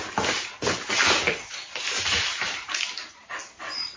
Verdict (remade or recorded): remade